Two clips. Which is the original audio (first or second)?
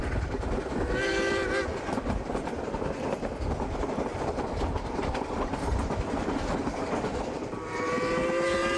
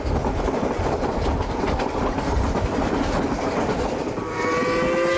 second